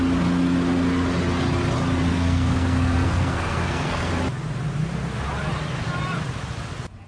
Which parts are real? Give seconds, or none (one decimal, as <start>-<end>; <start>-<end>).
0.0-2.1; 4.1-7.1